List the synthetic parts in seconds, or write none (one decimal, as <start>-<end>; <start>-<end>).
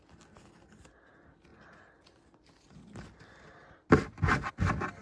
none